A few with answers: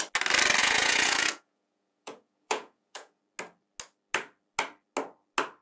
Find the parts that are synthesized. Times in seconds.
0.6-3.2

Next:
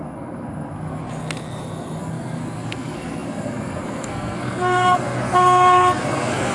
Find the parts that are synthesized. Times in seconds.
0.0-1.0; 2.0-6.5